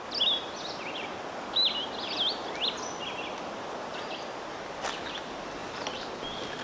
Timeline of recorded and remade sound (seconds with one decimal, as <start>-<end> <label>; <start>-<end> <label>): 0.0-6.6 recorded